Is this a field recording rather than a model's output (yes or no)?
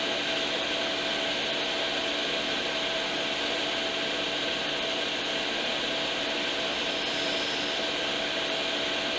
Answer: yes